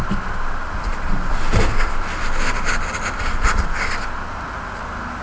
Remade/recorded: recorded